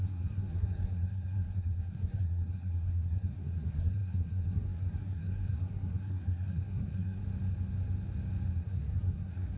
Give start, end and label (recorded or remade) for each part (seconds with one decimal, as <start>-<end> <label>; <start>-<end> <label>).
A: 0.0-7.2 remade; 7.2-8.6 recorded; 8.6-9.6 remade